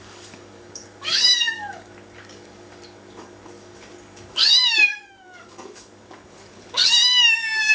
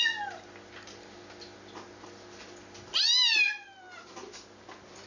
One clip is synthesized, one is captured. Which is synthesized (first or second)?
first